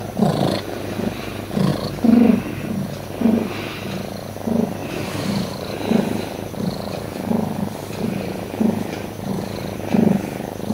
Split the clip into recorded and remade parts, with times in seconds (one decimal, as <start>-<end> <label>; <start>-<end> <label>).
0.0-4.8 recorded; 4.8-9.3 remade; 9.3-10.7 recorded